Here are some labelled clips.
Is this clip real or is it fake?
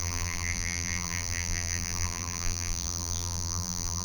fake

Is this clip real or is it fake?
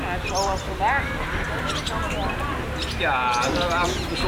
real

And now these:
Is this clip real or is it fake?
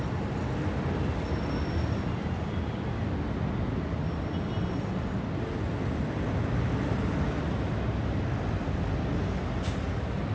real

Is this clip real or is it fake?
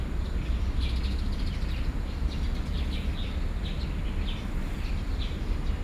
real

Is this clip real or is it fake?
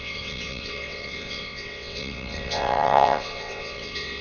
fake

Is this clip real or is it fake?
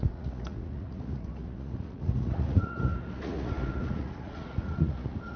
fake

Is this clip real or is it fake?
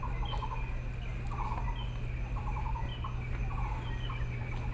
real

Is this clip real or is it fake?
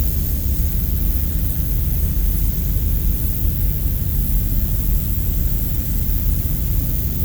real